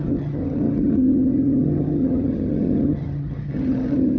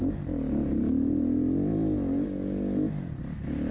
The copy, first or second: first